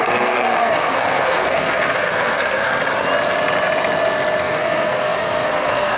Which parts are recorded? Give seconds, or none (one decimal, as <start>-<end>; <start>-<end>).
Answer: 2.7-4.4